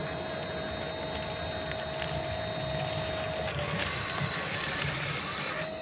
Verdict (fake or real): real